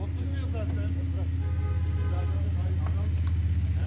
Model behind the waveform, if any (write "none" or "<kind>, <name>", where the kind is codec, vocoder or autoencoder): none